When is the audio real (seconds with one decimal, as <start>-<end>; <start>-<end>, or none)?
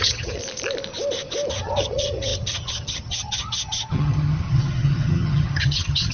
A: 0.4-1.5